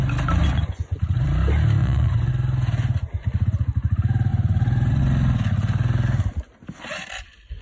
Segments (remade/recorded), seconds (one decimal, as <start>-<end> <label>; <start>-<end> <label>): 0.0-0.4 recorded; 0.4-1.0 remade; 1.0-1.8 recorded; 1.8-2.3 remade; 2.3-4.3 recorded; 4.3-5.0 remade; 5.0-7.6 recorded